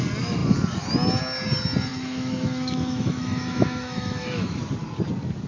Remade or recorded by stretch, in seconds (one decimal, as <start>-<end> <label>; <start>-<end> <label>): 0.0-1.9 recorded; 1.9-4.6 remade; 4.6-5.5 recorded